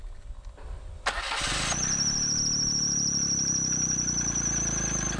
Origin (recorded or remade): recorded